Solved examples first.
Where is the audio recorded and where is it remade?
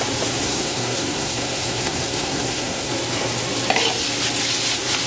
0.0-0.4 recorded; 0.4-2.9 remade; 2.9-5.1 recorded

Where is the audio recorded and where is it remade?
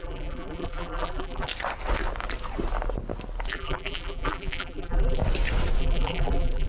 0.0-1.5 remade; 1.5-3.5 recorded; 3.5-5.2 remade; 5.2-5.8 recorded; 5.8-6.7 remade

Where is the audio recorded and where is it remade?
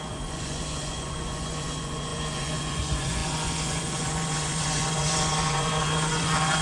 0.0-6.6 remade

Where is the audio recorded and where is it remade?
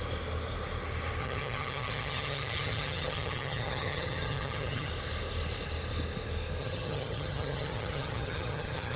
0.0-1.2 recorded; 1.2-4.9 remade; 4.9-6.6 recorded; 6.6-9.0 remade